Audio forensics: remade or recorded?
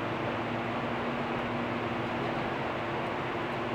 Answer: recorded